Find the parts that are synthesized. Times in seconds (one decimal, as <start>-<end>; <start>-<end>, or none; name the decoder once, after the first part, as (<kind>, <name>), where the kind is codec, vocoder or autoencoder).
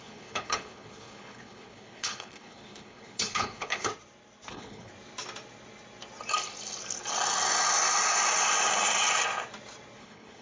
0.0-3.9 (codec, HILCodec); 4.5-4.9; 10.0-10.4